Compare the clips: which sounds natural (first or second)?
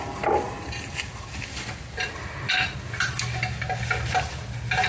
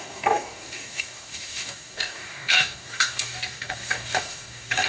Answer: first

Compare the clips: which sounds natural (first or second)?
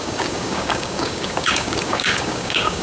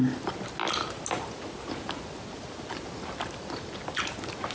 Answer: second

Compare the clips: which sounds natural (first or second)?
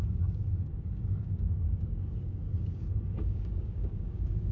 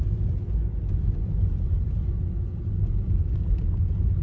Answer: second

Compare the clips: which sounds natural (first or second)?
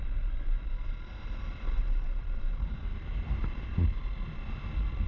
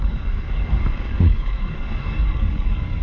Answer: first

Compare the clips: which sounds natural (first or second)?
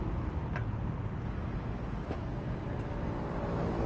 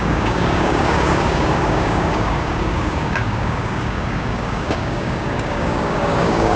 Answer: first